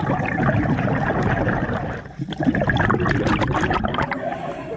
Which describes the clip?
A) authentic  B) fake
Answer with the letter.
B